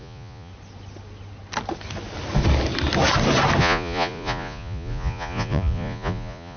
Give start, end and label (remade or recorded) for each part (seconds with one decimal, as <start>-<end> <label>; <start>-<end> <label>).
0.0-0.5 remade; 0.5-3.6 recorded; 3.6-6.6 remade